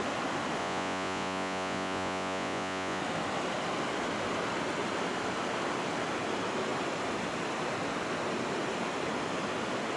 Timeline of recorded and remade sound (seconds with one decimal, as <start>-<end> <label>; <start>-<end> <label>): 0.0-0.6 recorded; 0.6-3.0 remade; 3.0-10.0 recorded